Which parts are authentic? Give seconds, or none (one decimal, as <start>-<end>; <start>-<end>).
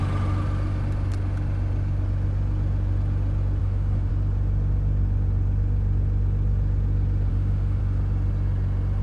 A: 0.0-3.6; 4.1-7.3; 7.8-9.0